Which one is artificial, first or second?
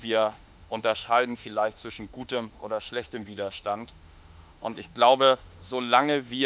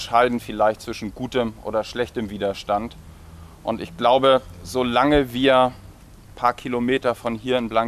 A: first